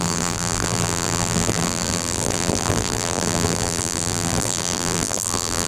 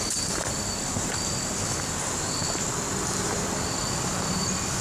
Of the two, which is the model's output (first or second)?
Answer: first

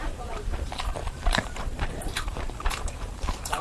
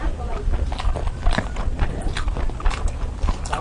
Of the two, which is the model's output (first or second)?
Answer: first